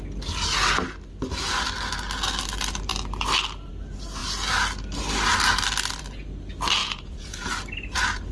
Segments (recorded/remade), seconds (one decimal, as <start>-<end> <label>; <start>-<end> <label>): 0.0-6.8 recorded; 6.8-7.5 remade; 7.5-8.3 recorded